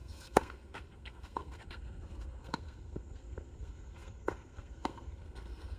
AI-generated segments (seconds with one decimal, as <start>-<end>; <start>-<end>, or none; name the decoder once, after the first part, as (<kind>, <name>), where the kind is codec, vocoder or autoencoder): 0.0-5.8 (codec, SNAC)